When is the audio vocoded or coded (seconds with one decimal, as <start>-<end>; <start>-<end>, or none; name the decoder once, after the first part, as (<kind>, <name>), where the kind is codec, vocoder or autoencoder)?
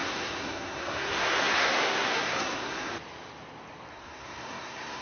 0.0-2.9 (codec, SNAC); 3.9-5.0